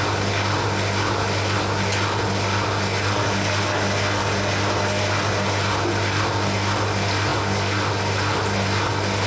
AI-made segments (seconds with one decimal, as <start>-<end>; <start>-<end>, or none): none